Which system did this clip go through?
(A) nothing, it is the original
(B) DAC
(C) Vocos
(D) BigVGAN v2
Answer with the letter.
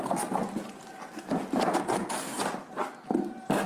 A